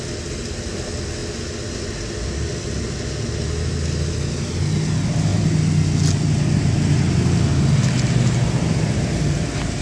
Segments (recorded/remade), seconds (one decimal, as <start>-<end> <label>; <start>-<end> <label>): 0.0-9.8 recorded

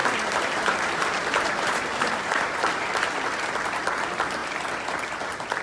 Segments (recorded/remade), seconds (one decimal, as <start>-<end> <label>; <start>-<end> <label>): 0.0-3.4 remade; 3.4-5.6 recorded

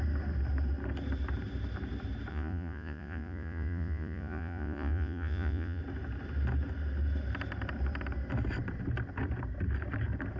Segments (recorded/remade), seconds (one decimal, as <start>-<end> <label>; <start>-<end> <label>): 0.0-2.3 recorded; 2.3-5.8 remade; 5.8-10.4 recorded